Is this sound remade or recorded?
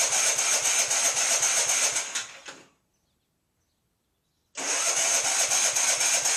recorded